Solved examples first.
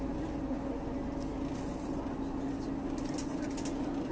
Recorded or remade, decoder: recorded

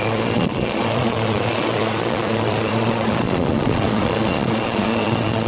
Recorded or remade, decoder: remade, vocoder, Vocos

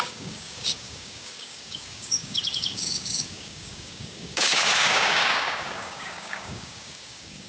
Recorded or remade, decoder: remade, codec, DAC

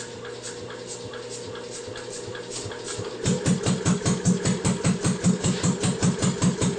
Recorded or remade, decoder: recorded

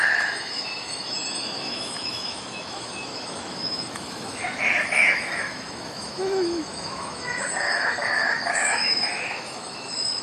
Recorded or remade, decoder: remade, autoencoder, DAC-VAE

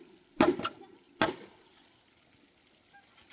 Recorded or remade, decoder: recorded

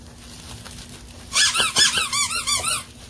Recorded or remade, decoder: recorded